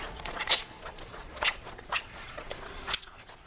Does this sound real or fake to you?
fake